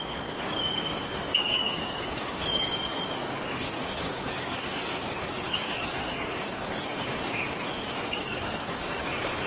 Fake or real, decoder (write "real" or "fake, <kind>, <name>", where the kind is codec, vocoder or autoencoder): fake, codec, DAC